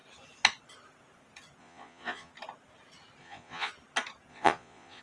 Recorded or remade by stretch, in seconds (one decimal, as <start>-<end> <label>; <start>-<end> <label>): 0.0-1.6 recorded; 1.6-2.3 remade; 2.3-3.2 recorded; 3.2-3.7 remade; 3.7-4.3 recorded; 4.3-5.0 remade